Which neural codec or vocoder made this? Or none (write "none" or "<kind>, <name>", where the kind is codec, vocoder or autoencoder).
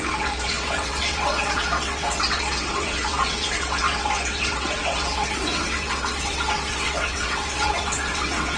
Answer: vocoder, WaveNeXt